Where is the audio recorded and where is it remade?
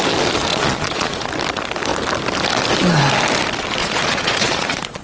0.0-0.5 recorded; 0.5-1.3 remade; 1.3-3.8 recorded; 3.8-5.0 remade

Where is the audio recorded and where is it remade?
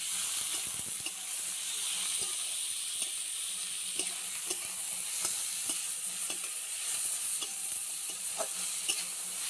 0.0-5.8 recorded; 5.8-8.4 remade; 8.4-9.5 recorded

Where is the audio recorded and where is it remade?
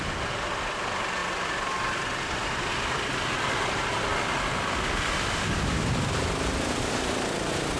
0.0-7.8 recorded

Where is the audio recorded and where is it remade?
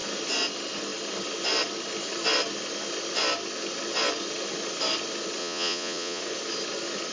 0.0-5.4 recorded; 5.4-6.2 remade; 6.2-7.1 recorded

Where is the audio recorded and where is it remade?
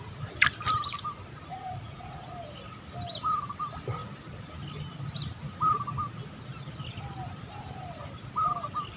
0.0-1.5 recorded; 1.5-2.2 remade; 2.2-9.0 recorded